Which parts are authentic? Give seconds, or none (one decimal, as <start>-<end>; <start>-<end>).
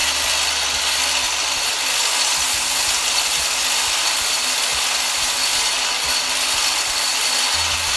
0.0-8.0